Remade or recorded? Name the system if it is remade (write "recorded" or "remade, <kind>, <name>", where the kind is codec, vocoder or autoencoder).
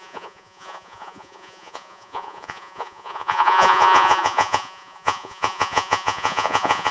remade, vocoder, Vocos